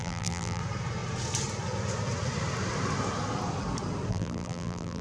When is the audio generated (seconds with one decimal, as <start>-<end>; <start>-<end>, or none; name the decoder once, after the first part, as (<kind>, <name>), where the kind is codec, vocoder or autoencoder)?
0.0-0.6 (vocoder, BigVGAN v2); 4.1-5.0

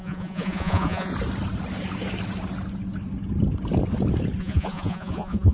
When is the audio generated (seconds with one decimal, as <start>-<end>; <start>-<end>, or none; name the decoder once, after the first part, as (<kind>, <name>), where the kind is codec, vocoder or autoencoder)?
0.0-1.1 (vocoder, Vocos); 4.4-5.5

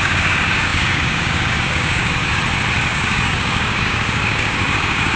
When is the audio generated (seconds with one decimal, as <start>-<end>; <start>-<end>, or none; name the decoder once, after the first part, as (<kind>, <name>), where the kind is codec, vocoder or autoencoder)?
0.0-2.2 (codec, DAC); 2.9-5.2